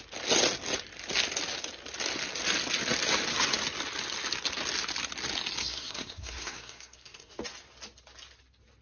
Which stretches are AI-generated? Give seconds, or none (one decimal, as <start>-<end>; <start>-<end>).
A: 5.6-7.4